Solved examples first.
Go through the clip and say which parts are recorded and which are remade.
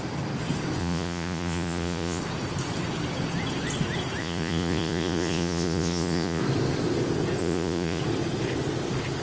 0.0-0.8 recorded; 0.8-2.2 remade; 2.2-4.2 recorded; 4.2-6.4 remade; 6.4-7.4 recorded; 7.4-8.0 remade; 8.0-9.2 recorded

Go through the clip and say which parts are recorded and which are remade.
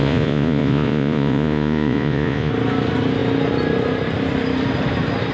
0.0-2.5 remade; 2.5-5.3 recorded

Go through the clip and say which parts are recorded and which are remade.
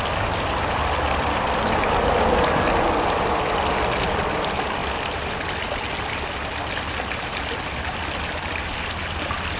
0.0-9.6 recorded